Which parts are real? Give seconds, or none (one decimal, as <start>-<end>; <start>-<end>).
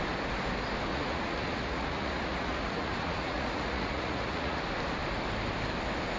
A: 0.0-0.9; 4.6-6.2